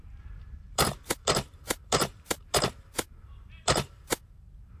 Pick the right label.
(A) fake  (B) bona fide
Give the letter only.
A